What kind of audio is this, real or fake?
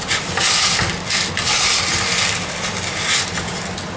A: real